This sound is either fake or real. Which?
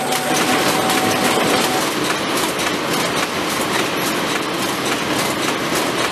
real